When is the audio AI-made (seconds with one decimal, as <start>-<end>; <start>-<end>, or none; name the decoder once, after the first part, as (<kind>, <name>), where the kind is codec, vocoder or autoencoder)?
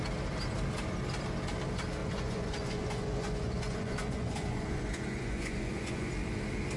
2.0-6.1 (vocoder, Vocos)